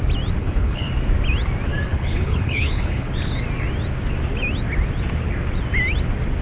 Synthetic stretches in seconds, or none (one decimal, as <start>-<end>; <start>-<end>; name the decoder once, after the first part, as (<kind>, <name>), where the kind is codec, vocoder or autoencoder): 0.4-0.9 (codec, HILCodec); 1.9-3.1